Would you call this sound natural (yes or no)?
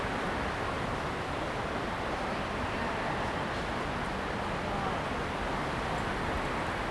yes